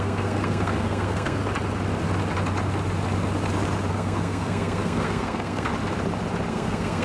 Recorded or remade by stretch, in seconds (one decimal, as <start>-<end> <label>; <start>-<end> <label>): 0.0-1.4 remade; 1.4-3.9 recorded; 3.9-5.7 remade; 5.7-6.5 recorded; 6.5-7.0 remade